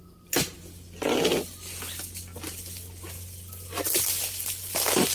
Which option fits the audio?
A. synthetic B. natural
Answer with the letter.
B